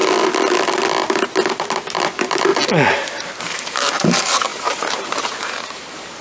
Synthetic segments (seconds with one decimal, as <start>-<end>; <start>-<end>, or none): 2.0-2.5; 3.4-6.2

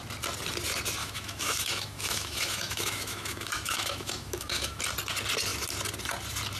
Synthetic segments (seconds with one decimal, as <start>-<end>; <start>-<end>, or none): 1.0-4.8

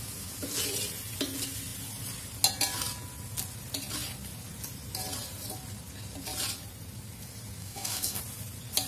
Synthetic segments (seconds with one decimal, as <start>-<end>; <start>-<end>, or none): 7.6-8.2

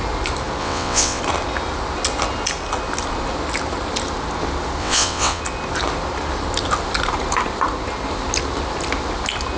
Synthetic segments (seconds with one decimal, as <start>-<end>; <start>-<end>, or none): 0.6-1.2; 4.8-5.4

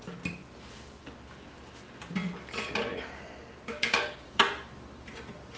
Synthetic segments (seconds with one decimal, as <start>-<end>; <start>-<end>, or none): 3.7-4.4

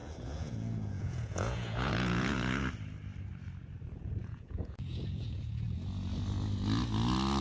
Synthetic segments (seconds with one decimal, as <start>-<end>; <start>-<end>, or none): 0.0-2.7; 4.2-5.7

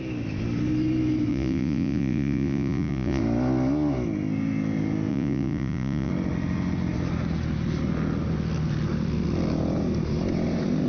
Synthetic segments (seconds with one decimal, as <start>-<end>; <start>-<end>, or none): 1.3-3.2; 5.1-6.1

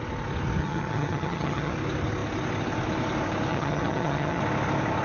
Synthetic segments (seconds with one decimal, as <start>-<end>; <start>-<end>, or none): 0.6-1.7; 3.5-4.4